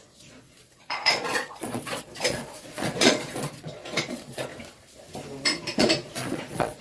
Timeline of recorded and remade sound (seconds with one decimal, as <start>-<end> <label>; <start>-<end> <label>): 0.0-4.5 remade; 4.5-5.6 recorded; 5.6-6.8 remade